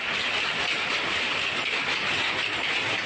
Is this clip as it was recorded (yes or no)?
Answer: yes